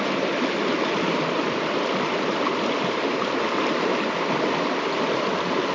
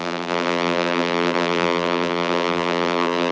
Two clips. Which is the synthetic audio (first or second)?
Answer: second